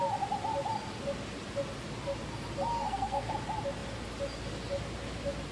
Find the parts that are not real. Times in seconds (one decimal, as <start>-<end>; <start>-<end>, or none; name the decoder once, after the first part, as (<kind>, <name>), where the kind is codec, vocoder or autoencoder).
2.7-3.3 (codec, SNAC)